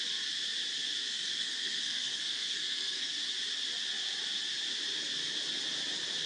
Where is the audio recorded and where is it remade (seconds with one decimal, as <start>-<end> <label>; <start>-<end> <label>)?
0.0-1.0 recorded; 1.0-3.1 remade; 3.1-6.3 recorded